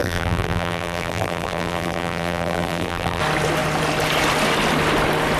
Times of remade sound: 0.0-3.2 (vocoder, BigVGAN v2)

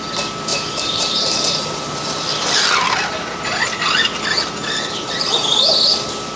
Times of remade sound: 0.5-1.9 (vocoder, BigVGAN v2)

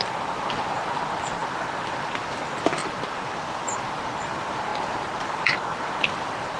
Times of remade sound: 0.0-6.6 (vocoder, BigVGAN v2)

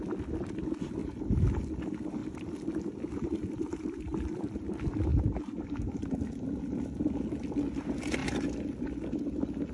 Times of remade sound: none

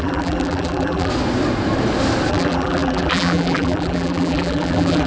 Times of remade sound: 0.0-1.1 (vocoder, BigVGAN v2); 2.3-5.1

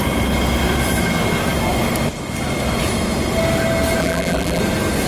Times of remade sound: 4.0-4.6 (vocoder, BigVGAN v2)

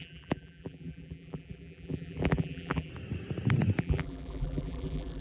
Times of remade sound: 0.0-2.9 (vocoder, BigVGAN v2); 3.8-5.2

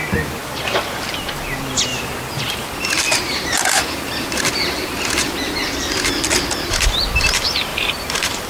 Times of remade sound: 1.9-5.6 (vocoder, BigVGAN v2); 7.7-8.5